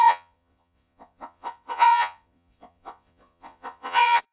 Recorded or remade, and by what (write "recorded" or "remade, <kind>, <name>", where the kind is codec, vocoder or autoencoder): remade, vocoder, Vocos